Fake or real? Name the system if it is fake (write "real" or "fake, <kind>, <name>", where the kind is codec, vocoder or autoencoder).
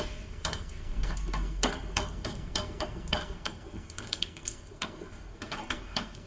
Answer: fake, codec, SNAC